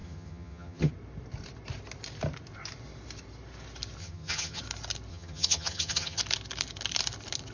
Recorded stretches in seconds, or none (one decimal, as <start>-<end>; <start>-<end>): 0.9-4.0; 4.6-5.1; 6.2-7.5